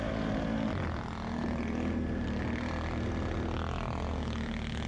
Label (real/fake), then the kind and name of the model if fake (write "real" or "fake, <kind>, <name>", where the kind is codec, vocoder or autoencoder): real